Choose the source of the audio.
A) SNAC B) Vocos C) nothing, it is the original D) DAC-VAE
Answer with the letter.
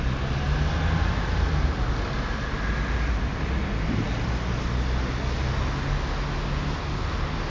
C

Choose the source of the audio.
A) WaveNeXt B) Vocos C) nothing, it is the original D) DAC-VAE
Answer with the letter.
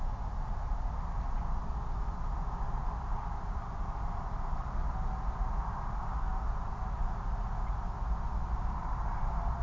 C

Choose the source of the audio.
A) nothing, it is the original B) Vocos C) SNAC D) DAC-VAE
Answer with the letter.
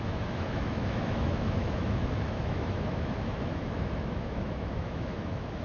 D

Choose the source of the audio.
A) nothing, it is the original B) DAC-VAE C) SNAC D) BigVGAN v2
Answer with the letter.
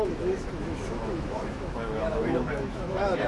B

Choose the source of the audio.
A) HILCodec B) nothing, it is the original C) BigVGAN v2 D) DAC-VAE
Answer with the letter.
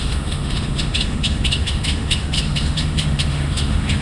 D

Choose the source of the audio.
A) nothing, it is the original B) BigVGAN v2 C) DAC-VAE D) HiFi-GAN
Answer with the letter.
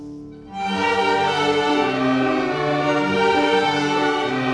A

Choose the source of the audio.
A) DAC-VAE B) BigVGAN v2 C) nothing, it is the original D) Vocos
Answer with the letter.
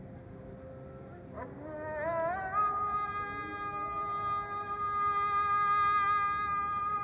C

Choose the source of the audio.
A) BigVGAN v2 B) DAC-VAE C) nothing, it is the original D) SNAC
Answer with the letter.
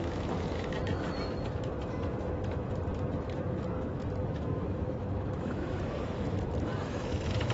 B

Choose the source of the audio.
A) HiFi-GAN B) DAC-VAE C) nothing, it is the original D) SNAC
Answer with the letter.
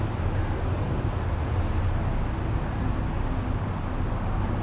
C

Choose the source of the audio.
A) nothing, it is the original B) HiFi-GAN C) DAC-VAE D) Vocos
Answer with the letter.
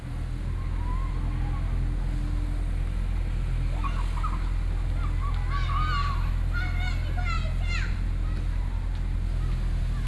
A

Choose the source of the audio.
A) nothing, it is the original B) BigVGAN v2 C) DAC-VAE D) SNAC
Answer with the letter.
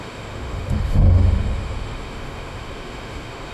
C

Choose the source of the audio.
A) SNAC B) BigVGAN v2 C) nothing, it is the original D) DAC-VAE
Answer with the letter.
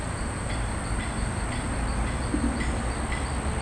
C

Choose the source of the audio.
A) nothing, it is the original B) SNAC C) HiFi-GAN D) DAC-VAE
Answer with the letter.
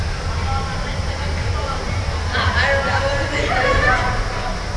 A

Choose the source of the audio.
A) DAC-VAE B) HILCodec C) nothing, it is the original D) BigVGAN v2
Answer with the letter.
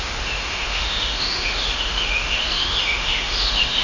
A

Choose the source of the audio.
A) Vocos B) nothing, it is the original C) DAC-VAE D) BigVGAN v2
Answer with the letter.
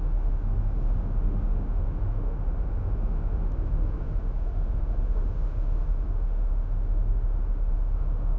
C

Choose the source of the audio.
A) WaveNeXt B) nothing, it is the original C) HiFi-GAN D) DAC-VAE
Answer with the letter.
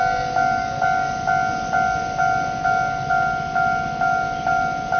B